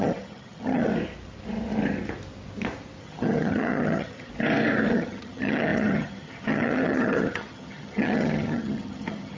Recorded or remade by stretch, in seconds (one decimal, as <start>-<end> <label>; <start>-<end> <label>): 0.0-0.9 remade; 0.9-3.0 recorded; 3.0-4.3 remade; 4.3-4.9 recorded; 4.9-9.4 remade